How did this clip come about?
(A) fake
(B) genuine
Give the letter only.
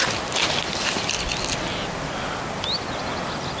B